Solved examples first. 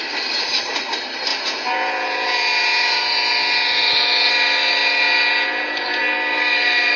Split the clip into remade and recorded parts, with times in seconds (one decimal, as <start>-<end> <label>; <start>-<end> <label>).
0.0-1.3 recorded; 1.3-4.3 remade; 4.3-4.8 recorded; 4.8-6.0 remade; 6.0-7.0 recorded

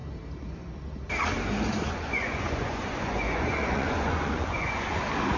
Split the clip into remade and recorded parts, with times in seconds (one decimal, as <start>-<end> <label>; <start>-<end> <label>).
0.0-1.8 recorded; 1.8-5.0 remade; 5.0-5.4 recorded

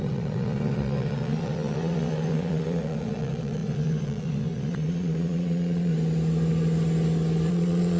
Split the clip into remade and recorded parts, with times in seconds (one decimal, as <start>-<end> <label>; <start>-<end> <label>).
0.0-5.9 remade; 5.9-7.5 recorded; 7.5-8.0 remade

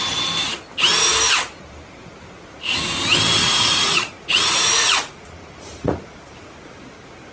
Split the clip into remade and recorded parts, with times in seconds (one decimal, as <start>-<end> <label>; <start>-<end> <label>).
0.0-3.4 recorded; 3.4-6.8 remade; 6.8-7.3 recorded